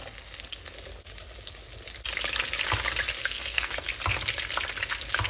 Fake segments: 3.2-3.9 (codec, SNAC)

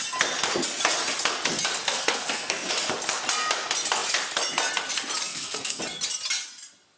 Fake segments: 1.8-2.7 (codec, SNAC); 5.3-5.8